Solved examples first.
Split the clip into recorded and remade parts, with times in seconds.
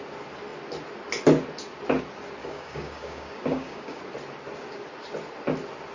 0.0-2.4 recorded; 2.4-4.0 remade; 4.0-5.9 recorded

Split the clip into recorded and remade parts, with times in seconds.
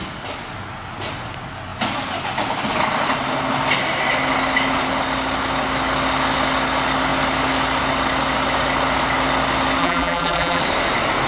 0.0-9.8 recorded; 9.8-10.6 remade; 10.6-11.3 recorded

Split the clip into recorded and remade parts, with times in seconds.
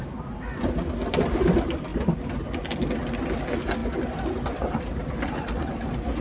0.0-6.2 recorded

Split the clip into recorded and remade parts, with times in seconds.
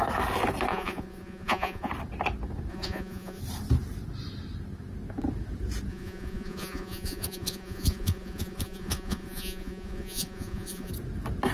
0.0-0.7 recorded; 0.7-1.9 remade; 1.9-2.7 recorded; 2.7-3.4 remade; 3.4-5.9 recorded; 5.9-10.9 remade; 10.9-11.5 recorded